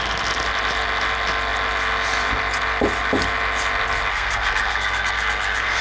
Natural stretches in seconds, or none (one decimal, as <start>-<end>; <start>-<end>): 0.0-4.1